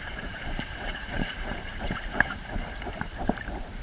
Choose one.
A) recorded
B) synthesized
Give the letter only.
B